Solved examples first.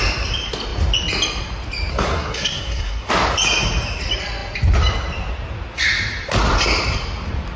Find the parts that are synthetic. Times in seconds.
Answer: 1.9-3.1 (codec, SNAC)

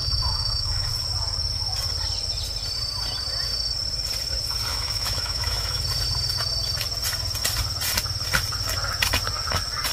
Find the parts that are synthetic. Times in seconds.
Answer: 0.0-0.9 (autoencoder, DAC-VAE); 4.7-5.8

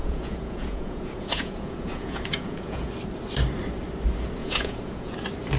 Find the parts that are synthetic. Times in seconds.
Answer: 0.0-2.9 (vocoder, Vocos); 4.4-5.1

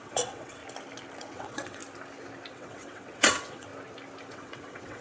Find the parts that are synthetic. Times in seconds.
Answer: 0.0-0.6 (vocoder, WaveNeXt); 1.2-1.8; 2.5-3.7; 4.3-5.0

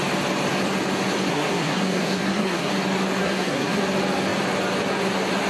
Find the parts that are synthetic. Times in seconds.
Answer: 1.3-2.7 (codec, SNAC); 3.2-3.8

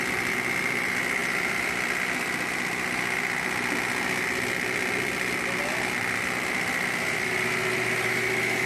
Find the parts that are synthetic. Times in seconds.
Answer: none